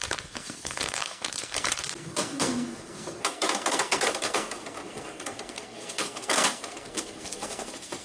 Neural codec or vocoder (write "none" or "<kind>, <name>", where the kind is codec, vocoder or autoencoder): codec, SNAC